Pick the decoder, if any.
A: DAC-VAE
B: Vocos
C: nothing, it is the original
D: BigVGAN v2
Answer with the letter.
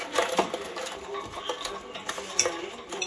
C